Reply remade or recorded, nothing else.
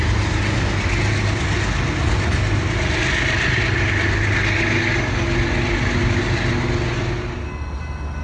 recorded